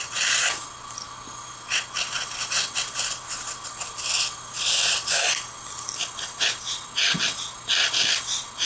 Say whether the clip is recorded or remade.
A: recorded